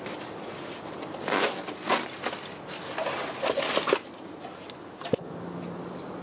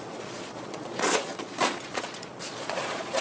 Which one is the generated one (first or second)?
second